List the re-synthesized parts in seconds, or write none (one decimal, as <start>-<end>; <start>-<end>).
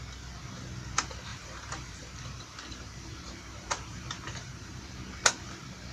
1.3-4.8